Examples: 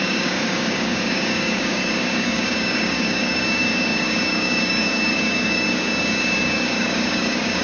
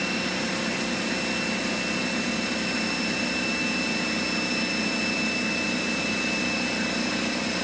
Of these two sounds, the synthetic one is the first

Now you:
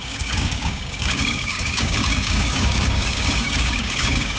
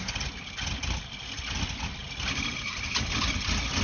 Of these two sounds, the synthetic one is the first